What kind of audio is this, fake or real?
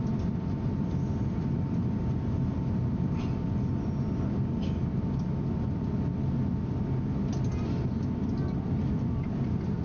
real